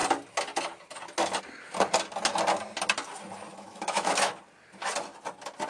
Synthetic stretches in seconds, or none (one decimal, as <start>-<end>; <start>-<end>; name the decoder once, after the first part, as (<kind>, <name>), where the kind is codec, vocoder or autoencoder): 3.5-4.3 (autoencoder, DAC-VAE)

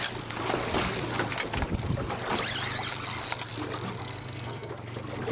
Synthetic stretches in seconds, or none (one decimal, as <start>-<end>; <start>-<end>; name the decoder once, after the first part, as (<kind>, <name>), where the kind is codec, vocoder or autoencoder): 4.0-4.7 (codec, SNAC)

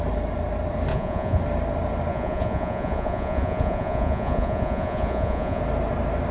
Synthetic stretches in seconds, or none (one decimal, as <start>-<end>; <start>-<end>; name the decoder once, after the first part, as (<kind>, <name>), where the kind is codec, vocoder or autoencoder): 0.9-1.4 (vocoder, Vocos); 2.1-5.6